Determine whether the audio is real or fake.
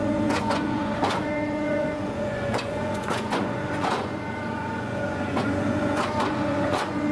fake